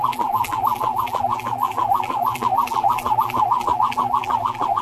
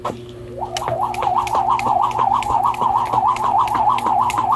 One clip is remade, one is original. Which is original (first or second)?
second